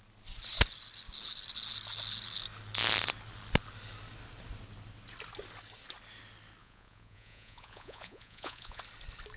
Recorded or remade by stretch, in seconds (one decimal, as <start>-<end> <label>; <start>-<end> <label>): 0.0-6.6 recorded; 6.6-8.8 remade; 8.8-9.4 recorded